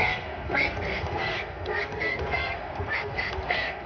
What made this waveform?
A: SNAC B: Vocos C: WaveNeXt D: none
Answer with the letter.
A